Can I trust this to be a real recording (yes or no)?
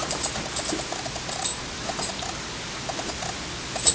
yes